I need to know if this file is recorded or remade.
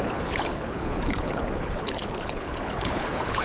remade